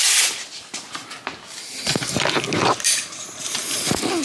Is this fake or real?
real